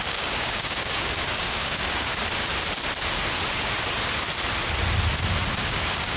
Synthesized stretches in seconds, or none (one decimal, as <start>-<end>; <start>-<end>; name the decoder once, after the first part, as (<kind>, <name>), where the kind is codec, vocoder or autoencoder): 0.0-2.1 (codec, DAC); 5.6-6.2